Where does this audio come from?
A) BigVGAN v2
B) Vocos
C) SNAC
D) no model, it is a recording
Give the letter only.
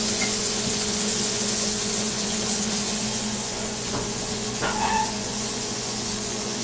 B